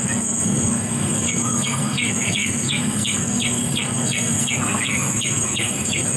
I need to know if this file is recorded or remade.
remade